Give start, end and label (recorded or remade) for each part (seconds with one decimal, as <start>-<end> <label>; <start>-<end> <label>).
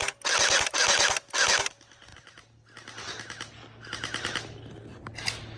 0.0-5.6 recorded